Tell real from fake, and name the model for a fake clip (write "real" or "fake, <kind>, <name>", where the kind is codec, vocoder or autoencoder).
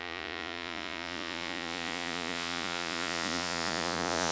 fake, vocoder, Vocos